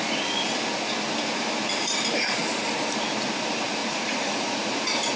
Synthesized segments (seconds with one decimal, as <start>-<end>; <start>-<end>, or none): 3.8-4.8